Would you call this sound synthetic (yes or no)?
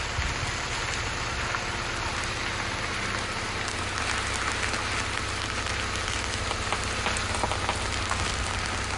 no